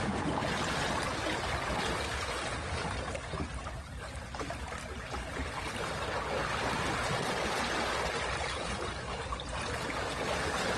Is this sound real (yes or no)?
yes